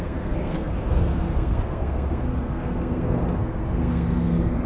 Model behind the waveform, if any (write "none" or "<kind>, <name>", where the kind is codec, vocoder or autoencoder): codec, SNAC